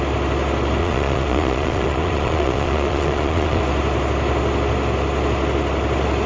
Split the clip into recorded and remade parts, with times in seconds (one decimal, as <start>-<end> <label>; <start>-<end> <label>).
0.0-0.8 recorded; 0.8-3.6 remade; 3.6-6.3 recorded